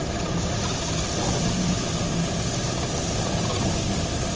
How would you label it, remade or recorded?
recorded